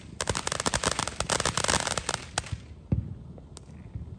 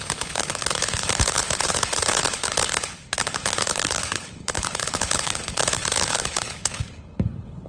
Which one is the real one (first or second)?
first